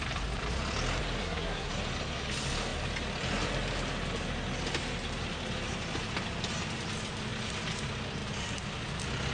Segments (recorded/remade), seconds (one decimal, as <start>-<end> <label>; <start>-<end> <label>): 0.0-1.2 recorded; 1.2-1.7 remade; 1.7-9.3 recorded

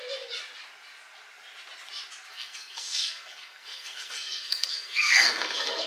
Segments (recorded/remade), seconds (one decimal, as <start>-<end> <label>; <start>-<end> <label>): 0.0-2.3 recorded; 2.3-5.9 remade

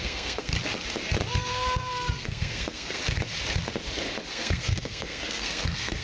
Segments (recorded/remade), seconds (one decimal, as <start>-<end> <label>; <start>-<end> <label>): 0.0-0.5 remade; 0.5-1.3 recorded; 1.3-3.0 remade; 3.0-4.3 recorded; 4.3-6.0 remade

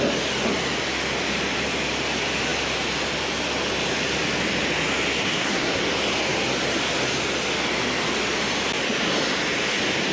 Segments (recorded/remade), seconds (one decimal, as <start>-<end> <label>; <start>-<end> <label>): 0.0-5.2 recorded; 5.2-5.8 remade; 5.8-10.1 recorded

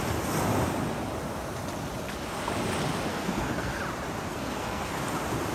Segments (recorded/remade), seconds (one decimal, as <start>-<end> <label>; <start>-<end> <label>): 0.0-3.1 recorded; 3.1-3.8 remade; 3.8-4.3 recorded; 4.3-4.9 remade; 4.9-5.5 recorded